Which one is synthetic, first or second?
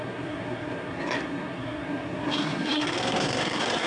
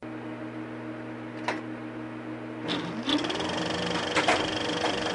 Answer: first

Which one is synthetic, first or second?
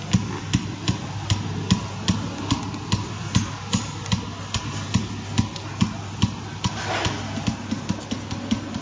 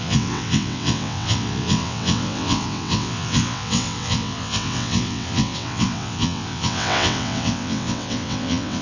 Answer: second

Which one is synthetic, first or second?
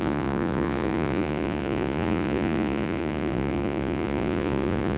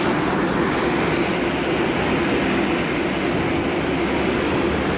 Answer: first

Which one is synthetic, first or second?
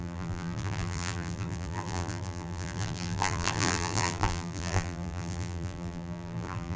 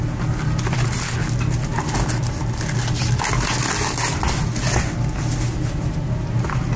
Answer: first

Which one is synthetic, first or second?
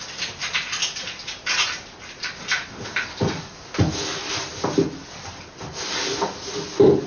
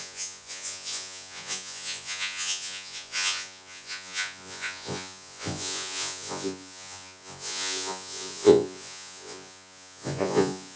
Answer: second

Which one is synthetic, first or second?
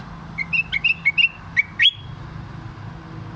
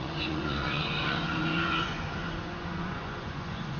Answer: second